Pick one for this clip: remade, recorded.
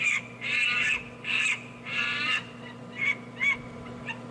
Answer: recorded